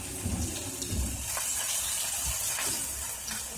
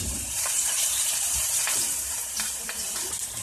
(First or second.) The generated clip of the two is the second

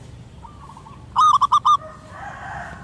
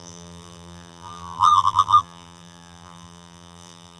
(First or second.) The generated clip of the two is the second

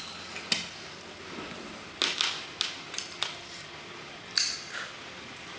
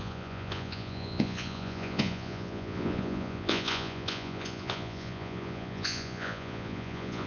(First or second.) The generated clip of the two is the second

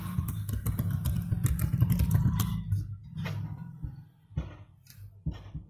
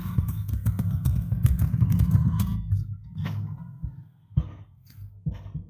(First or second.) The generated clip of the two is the second